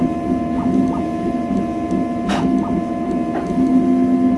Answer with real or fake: real